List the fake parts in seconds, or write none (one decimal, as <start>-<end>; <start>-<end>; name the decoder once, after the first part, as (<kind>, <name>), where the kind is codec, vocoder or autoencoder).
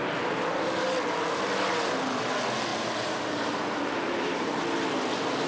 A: 2.7-4.6 (vocoder, BigVGAN v2)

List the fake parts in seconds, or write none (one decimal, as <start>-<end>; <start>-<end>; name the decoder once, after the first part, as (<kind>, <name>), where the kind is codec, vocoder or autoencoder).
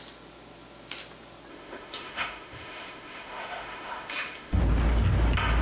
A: 1.5-4.6 (autoencoder, DAC-VAE)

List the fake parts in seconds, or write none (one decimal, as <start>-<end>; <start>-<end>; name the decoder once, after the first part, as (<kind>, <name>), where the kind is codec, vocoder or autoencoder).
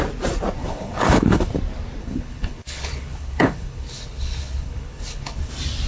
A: 0.6-1.5 (codec, HILCodec); 2.0-5.5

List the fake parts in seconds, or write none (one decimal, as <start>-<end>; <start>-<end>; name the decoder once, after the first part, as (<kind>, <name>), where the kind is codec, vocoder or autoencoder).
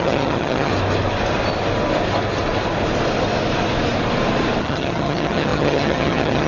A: 0.0-0.7 (vocoder, HiFi-GAN); 4.6-6.5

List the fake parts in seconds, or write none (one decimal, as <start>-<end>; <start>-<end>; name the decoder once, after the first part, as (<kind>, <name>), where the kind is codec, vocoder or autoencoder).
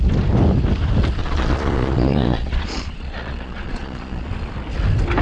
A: 1.2-4.3 (vocoder, Vocos)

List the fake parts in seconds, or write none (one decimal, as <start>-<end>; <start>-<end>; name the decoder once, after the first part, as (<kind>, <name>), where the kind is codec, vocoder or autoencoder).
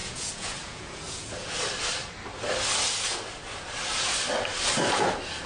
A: 0.0-1.6 (vocoder, Vocos)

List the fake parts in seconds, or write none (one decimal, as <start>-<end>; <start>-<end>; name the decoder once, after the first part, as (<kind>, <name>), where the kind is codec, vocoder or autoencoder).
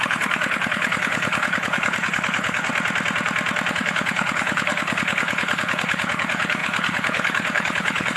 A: 0.0-2.7 (codec, HILCodec); 3.7-8.2